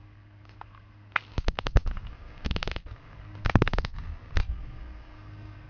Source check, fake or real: fake